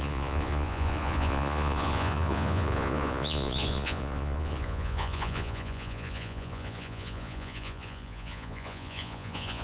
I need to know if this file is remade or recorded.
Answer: remade